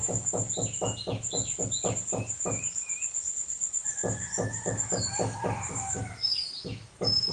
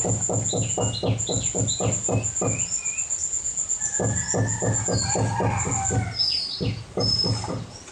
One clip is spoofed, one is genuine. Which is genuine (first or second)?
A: second